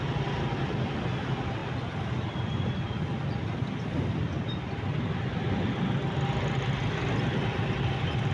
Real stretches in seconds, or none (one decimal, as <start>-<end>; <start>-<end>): 0.0-8.3